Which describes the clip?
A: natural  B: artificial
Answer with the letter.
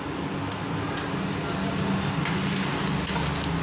A